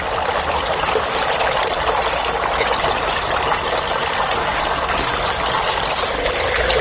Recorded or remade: recorded